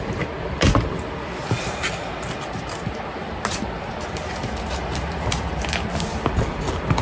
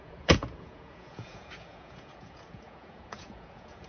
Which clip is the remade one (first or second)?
second